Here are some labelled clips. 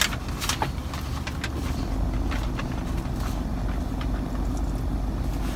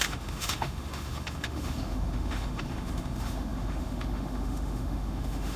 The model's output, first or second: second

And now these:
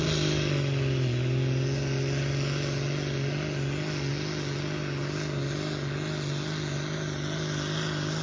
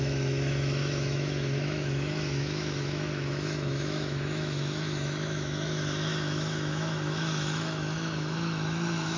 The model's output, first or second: second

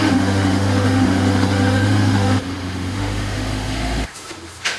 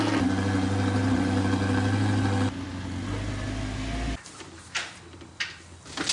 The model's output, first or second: first